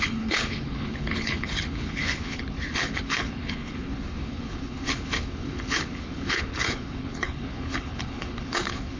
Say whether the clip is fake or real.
fake